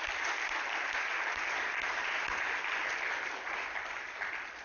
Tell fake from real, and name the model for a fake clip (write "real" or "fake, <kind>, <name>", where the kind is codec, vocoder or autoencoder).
real